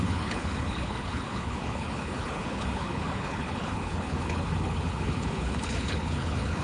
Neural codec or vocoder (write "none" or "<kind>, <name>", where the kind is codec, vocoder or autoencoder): codec, HILCodec